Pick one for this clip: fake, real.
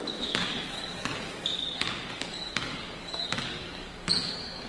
fake